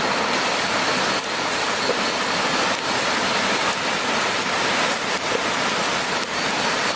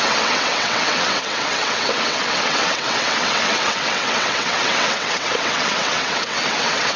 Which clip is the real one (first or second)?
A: first